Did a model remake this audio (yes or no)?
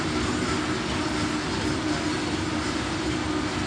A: no